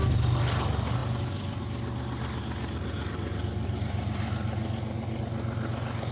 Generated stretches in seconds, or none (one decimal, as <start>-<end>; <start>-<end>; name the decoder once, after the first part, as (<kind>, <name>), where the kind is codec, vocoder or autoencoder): none